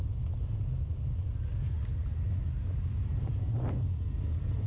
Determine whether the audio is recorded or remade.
recorded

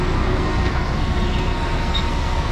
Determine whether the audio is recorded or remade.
remade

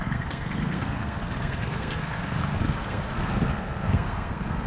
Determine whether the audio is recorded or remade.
remade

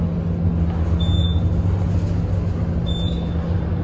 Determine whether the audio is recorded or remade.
recorded